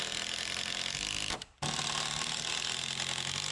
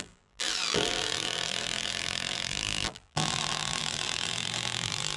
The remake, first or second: second